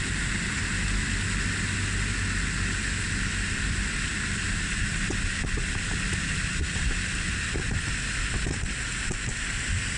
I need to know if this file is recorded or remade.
recorded